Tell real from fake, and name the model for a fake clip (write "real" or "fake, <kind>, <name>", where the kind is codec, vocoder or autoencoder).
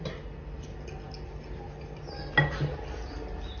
real